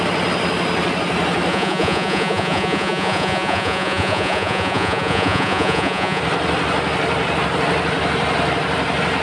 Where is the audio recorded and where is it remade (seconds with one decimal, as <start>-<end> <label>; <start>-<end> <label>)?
0.0-1.5 recorded; 1.5-6.2 remade; 6.2-9.2 recorded